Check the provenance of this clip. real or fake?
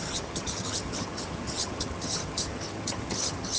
fake